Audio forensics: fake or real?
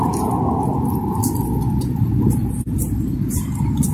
real